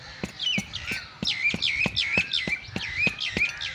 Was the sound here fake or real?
real